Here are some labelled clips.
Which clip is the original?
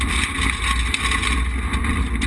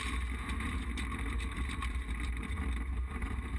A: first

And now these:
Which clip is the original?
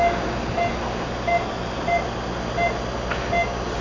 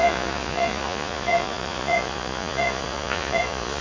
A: first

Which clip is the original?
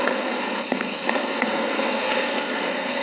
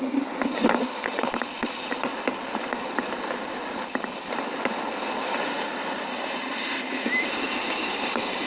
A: second